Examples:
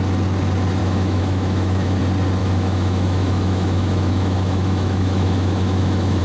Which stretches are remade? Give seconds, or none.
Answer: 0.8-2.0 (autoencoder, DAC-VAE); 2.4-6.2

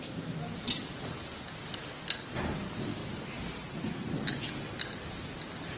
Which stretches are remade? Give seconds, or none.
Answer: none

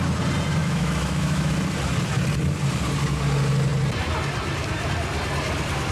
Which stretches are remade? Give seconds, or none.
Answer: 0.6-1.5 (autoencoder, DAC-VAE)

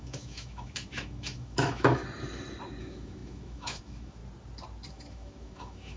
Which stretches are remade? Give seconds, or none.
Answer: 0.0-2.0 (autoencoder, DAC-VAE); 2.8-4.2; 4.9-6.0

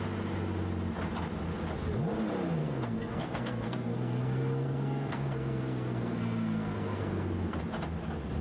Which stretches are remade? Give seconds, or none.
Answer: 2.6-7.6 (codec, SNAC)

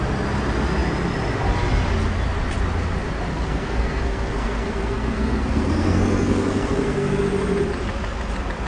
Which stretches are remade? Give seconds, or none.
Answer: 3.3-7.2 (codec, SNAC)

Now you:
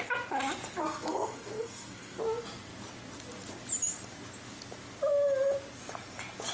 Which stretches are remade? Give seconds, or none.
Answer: 0.8-2.2 (codec, SNAC)